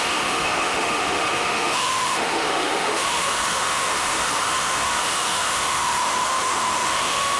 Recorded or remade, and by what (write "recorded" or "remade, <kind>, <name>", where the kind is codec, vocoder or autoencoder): remade, autoencoder, DAC-VAE